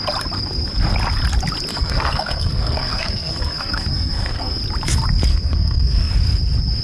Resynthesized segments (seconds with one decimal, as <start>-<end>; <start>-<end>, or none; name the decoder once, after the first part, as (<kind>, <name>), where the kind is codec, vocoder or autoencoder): 1.7-4.6 (codec, SNAC); 5.3-6.1